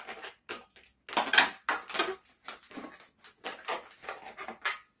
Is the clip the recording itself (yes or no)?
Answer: yes